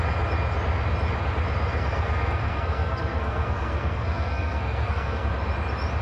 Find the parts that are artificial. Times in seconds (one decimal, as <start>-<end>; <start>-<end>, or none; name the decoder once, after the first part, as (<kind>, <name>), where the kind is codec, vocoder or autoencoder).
1.7-5.3 (codec, SNAC)